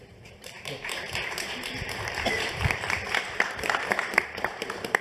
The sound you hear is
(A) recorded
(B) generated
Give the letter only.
B